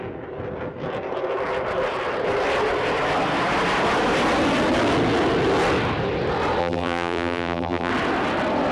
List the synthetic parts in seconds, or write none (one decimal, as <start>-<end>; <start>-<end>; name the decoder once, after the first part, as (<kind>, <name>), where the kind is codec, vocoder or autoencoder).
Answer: 6.6-7.9 (vocoder, BigVGAN v2)